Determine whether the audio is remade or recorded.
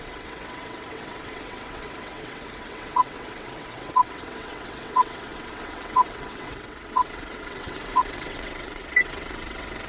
remade